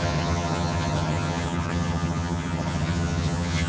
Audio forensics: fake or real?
fake